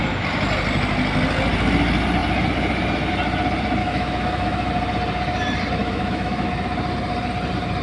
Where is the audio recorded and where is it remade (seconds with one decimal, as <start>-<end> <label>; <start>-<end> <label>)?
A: 0.0-3.8 recorded; 3.8-4.7 remade; 4.7-5.8 recorded; 5.8-6.5 remade; 6.5-7.8 recorded